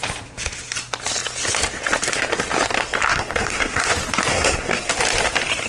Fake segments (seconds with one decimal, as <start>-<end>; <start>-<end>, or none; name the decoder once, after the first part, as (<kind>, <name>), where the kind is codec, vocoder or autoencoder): 3.1-3.9 (codec, SNAC); 4.3-4.9